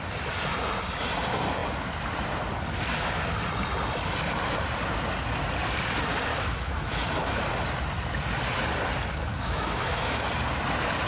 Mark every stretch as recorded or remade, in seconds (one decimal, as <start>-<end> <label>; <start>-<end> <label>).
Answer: 0.0-6.3 recorded; 6.3-7.4 remade; 7.4-9.3 recorded; 9.3-10.3 remade; 10.3-11.1 recorded